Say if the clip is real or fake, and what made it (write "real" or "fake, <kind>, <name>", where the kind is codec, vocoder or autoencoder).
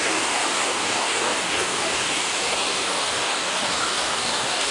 fake, codec, DAC